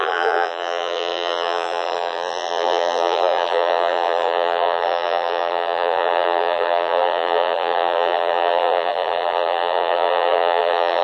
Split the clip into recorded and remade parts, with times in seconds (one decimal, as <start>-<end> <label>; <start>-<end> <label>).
0.0-11.0 remade